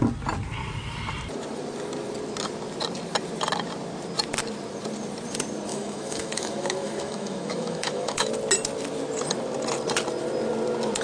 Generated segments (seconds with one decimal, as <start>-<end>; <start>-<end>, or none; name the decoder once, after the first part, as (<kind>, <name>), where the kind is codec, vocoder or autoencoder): 5.7-8.3 (autoencoder, DAC-VAE)